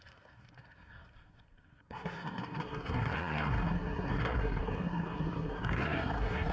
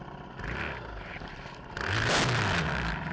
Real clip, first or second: second